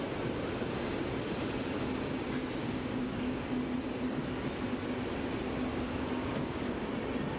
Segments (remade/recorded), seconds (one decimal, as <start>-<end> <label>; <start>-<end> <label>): 0.0-2.6 recorded; 2.6-3.4 remade; 3.4-5.7 recorded; 5.7-6.7 remade; 6.7-7.4 recorded